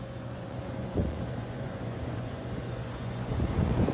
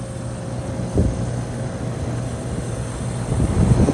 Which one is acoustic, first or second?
second